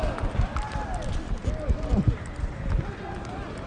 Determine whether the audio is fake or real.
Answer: real